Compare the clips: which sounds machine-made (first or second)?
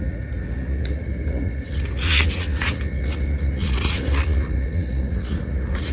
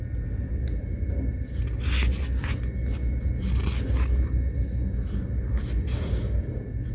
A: first